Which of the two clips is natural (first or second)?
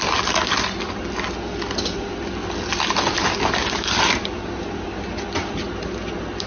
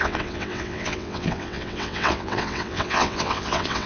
first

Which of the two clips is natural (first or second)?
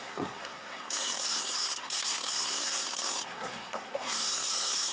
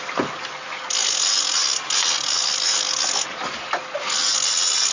second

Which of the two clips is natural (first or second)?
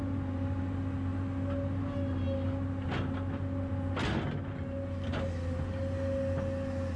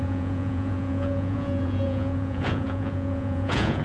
first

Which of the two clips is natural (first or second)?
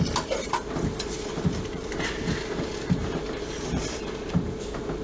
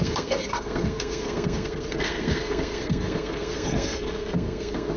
first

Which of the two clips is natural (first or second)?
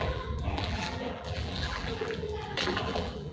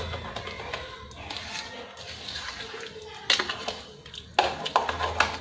second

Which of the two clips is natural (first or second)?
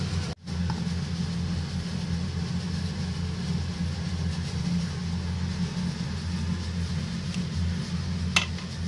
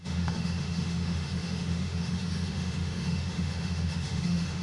first